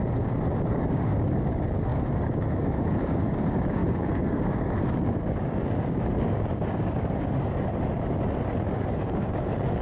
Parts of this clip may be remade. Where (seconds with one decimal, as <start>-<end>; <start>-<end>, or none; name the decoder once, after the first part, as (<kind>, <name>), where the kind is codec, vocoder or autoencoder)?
0.0-7.7 (codec, DAC); 8.7-9.8